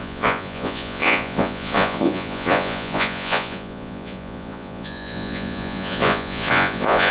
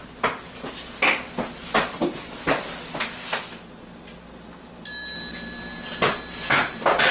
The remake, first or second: first